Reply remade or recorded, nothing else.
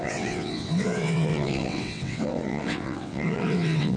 remade